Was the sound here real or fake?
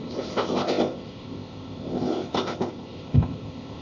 fake